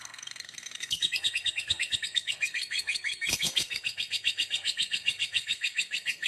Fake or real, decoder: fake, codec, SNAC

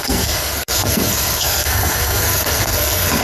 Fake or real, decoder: fake, codec, SNAC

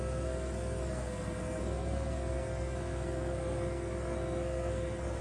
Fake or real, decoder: fake, codec, SNAC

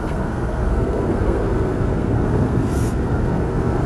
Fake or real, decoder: fake, codec, SNAC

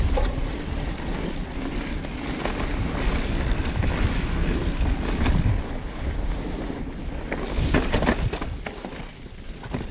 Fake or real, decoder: real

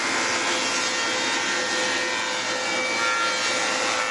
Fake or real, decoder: real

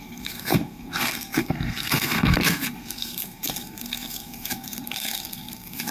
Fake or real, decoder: fake, codec, SNAC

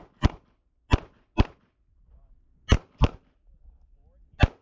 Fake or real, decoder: real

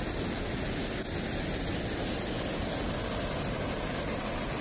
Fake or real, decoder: real